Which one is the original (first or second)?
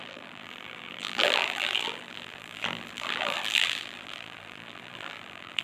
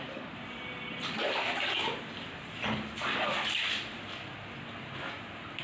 second